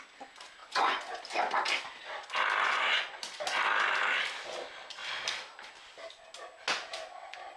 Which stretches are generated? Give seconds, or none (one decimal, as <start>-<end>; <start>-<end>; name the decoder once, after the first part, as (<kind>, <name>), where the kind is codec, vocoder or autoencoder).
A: 0.6-1.2 (vocoder, Vocos); 2.6-3.2